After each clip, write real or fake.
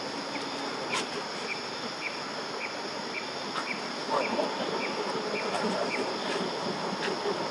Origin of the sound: real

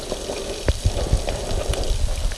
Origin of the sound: real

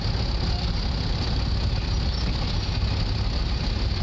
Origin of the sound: real